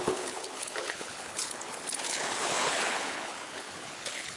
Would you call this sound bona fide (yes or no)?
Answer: no